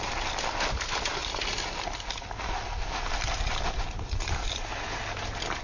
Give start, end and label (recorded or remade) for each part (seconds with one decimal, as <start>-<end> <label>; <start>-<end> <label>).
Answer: 0.0-5.6 recorded